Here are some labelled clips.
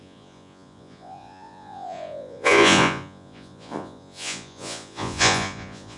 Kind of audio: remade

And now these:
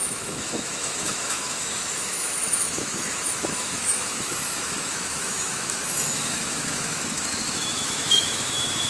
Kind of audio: remade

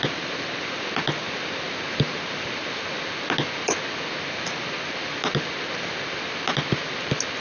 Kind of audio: recorded